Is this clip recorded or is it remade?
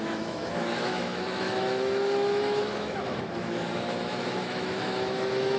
remade